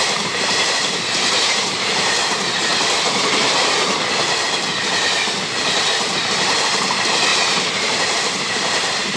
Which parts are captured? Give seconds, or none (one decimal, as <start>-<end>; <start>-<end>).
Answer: 2.7-6.0